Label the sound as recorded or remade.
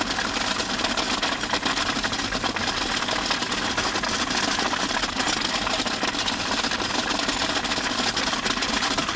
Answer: recorded